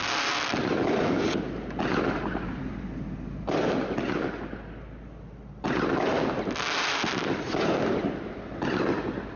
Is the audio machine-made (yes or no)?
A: no